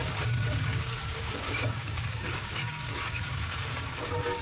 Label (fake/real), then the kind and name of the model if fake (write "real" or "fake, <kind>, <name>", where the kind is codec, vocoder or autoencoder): fake, codec, DAC